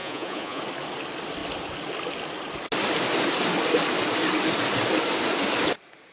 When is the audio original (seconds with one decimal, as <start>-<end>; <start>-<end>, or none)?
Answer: 0.6-6.1